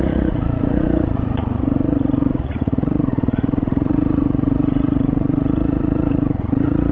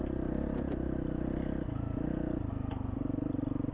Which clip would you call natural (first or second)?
second